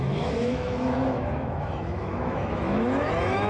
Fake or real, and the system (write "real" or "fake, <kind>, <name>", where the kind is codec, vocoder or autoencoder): fake, autoencoder, DAC-VAE